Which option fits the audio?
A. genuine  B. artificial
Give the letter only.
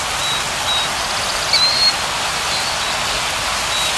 A